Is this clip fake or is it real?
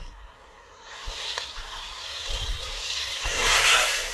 fake